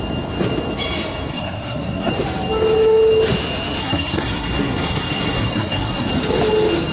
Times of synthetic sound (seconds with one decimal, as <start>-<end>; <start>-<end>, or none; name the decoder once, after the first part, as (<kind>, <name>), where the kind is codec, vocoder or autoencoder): 1.3-2.1 (codec, SNAC); 3.8-6.1